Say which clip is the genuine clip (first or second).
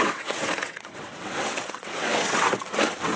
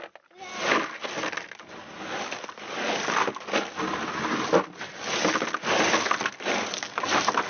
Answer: second